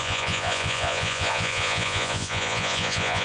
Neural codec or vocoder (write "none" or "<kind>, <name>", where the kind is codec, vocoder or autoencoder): vocoder, Vocos